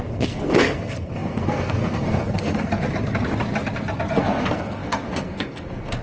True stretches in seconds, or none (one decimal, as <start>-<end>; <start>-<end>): 2.7-4.2